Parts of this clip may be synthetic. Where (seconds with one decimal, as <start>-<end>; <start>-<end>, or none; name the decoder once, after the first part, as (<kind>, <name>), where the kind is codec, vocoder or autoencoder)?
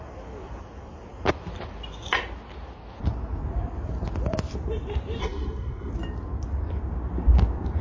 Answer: 5.2-5.9 (codec, SNAC)